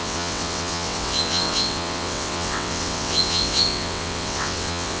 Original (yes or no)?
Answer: no